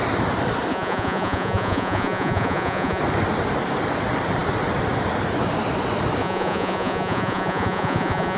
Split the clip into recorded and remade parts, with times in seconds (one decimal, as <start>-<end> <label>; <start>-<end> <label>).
0.0-0.7 recorded; 0.7-3.0 remade; 3.0-6.2 recorded; 6.2-8.4 remade